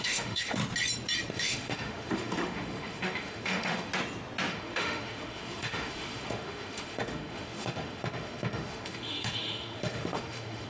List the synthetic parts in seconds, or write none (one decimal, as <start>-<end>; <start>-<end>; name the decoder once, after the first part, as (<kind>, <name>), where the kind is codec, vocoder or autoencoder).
0.0-0.6 (autoencoder, DAC-VAE); 1.3-3.9; 4.5-10.7